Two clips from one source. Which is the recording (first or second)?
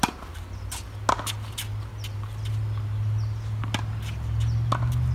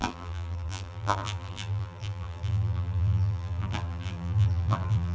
first